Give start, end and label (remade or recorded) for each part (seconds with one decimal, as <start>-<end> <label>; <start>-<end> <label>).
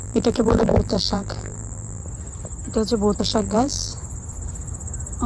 0.0-2.0 remade; 2.0-3.2 recorded; 3.2-3.9 remade; 3.9-5.3 recorded